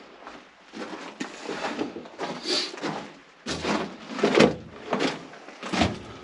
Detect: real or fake real